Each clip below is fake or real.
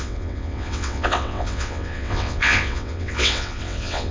fake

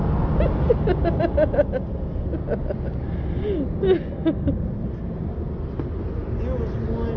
real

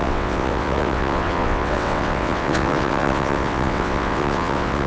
fake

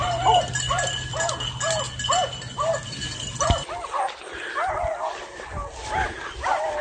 real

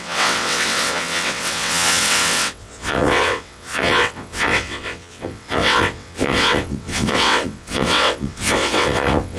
fake